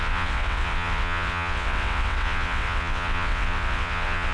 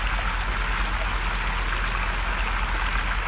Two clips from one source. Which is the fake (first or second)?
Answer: first